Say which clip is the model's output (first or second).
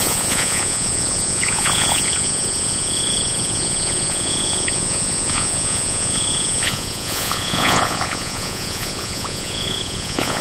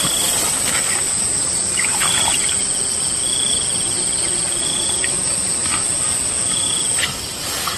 first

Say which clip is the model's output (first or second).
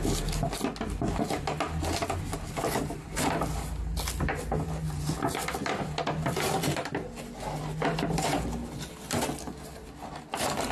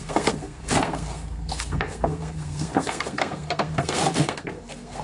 second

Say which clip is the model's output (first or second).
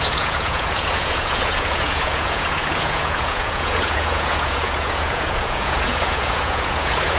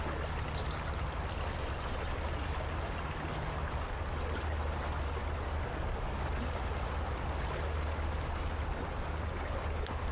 first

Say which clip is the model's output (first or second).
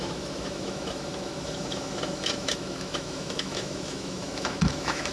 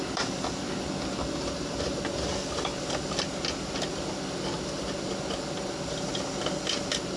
first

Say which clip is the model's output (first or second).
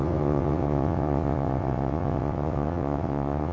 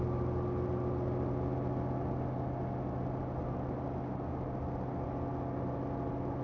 first